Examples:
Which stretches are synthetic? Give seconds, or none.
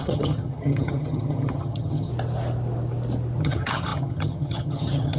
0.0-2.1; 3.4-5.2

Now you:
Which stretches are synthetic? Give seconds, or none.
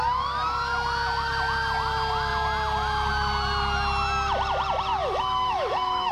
5.0-6.1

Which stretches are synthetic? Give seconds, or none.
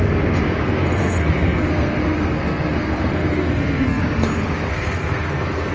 0.6-4.0; 4.7-5.7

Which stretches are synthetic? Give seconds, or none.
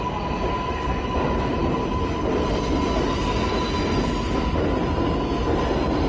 none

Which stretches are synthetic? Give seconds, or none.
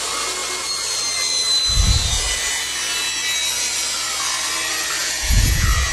5.0-5.9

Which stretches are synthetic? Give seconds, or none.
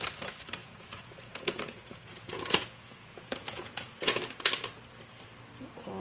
0.6-4.2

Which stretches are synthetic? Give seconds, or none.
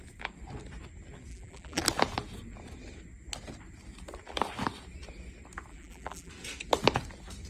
1.3-1.8; 5.7-6.3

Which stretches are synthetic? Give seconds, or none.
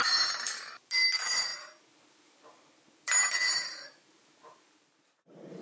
none